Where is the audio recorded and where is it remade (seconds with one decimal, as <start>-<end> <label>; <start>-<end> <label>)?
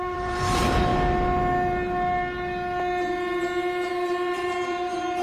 0.0-0.9 remade; 0.9-3.9 recorded; 3.9-5.2 remade